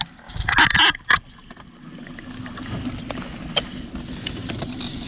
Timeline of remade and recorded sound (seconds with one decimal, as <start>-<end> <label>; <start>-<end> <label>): 0.0-5.1 recorded